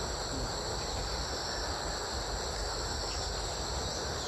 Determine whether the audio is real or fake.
real